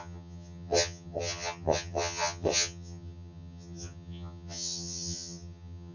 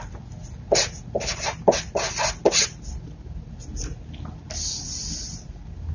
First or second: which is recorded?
second